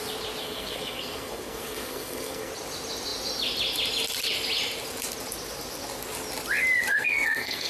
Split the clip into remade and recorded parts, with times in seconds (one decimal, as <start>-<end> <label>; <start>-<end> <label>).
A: 0.0-0.4 recorded; 0.4-2.5 remade; 2.5-6.9 recorded; 6.9-7.7 remade